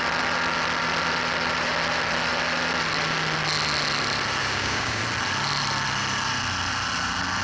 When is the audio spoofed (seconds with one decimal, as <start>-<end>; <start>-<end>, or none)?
4.4-5.0